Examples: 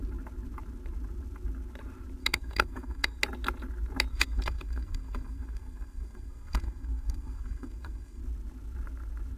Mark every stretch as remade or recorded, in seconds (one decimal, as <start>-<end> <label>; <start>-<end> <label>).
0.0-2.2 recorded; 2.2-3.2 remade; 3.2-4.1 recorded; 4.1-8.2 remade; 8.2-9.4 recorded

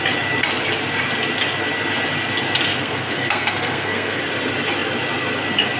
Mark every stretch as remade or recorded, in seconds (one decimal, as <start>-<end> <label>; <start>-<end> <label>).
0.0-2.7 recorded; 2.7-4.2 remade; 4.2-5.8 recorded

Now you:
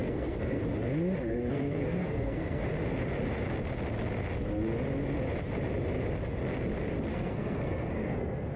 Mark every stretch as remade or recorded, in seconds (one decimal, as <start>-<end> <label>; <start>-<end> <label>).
0.0-0.6 remade; 0.6-1.3 recorded; 1.3-2.6 remade; 2.6-7.1 recorded; 7.1-8.6 remade

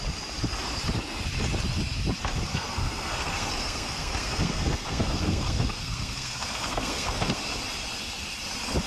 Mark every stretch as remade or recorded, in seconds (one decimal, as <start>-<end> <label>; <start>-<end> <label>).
0.0-2.5 recorded; 2.5-7.4 remade; 7.4-8.9 recorded

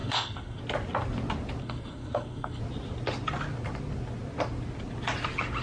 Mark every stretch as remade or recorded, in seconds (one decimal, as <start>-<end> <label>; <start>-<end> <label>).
0.0-0.6 remade; 0.6-1.6 recorded; 1.6-2.6 remade; 2.6-5.6 recorded